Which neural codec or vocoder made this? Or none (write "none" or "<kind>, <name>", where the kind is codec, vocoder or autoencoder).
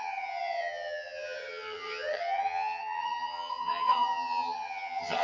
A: vocoder, HiFi-GAN